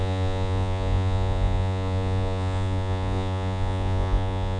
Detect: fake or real fake